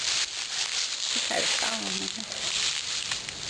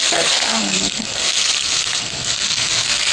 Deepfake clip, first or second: second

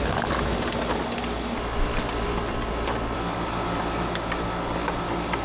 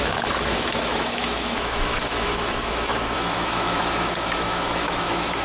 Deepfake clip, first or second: second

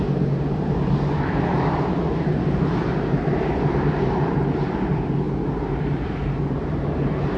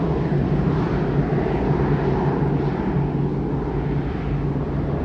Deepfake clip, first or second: first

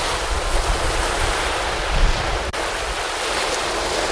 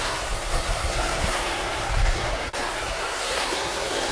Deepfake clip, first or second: second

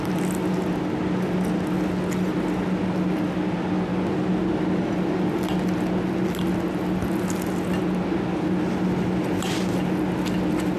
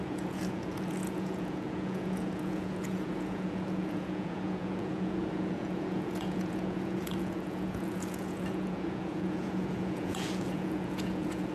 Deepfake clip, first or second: second